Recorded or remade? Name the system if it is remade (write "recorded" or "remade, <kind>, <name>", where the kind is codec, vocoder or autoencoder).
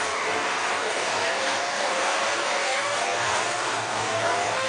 remade, codec, DAC